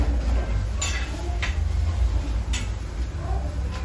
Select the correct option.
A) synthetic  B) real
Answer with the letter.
B